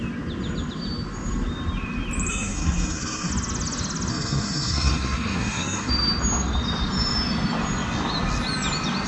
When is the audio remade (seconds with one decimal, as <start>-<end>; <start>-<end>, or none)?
2.3-3.3; 4.1-5.9